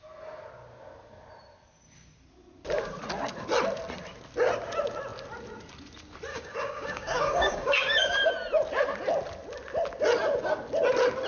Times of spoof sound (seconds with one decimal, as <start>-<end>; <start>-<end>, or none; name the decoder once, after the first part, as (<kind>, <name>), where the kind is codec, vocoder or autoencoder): 6.3-8.3 (codec, DAC)